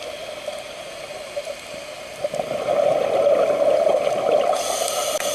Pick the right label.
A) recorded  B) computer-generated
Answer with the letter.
A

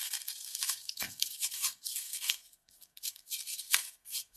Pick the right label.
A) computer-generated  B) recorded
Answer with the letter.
A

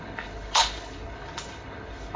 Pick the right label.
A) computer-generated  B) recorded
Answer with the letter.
A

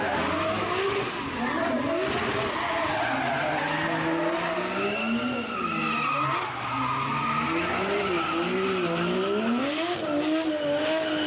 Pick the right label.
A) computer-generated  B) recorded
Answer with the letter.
B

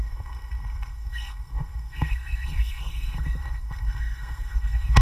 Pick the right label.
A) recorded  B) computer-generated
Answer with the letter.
B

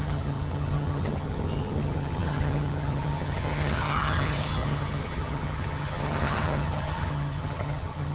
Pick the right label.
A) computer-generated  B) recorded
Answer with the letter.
A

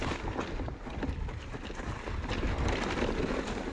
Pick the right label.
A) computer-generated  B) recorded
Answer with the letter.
B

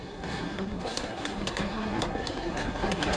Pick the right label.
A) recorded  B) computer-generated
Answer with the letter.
B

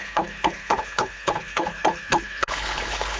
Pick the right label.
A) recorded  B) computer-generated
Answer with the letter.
B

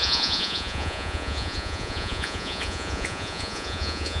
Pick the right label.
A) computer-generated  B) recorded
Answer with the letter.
A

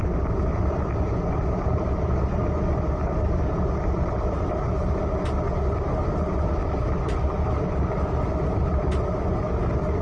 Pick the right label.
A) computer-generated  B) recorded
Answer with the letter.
B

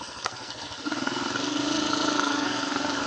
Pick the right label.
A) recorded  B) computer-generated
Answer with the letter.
B